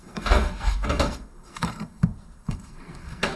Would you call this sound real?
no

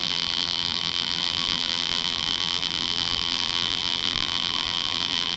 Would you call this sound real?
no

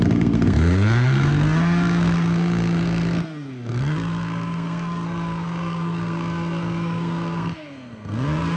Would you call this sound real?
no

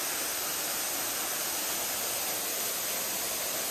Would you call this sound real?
yes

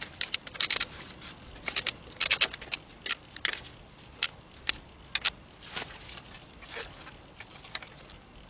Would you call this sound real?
yes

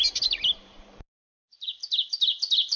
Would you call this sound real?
no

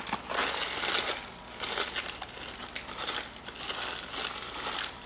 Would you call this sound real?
yes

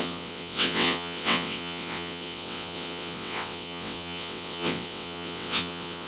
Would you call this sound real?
no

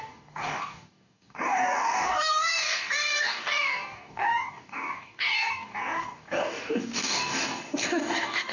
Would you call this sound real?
no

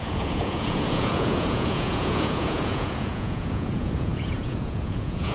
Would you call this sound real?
no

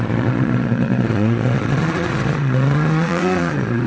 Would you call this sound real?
no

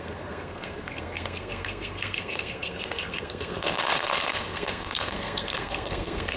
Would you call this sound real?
no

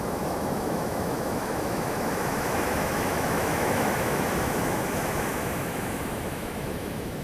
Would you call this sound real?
no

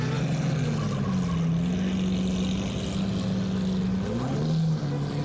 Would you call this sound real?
yes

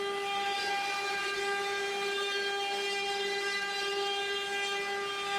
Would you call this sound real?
yes